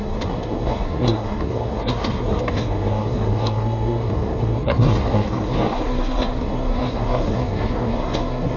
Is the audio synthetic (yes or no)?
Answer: yes